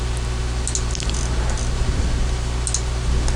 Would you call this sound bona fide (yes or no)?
yes